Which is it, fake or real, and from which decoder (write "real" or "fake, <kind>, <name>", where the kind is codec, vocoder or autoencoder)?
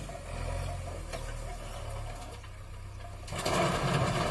real